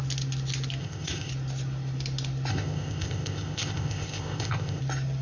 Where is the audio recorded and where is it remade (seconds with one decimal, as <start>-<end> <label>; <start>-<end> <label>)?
0.0-0.8 recorded; 0.8-1.3 remade; 1.3-2.5 recorded; 2.5-4.8 remade; 4.8-5.2 recorded